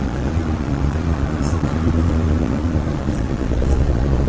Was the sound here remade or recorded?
remade